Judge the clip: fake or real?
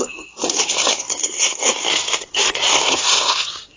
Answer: fake